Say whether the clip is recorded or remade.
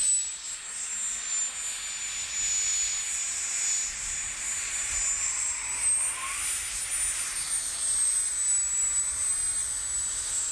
recorded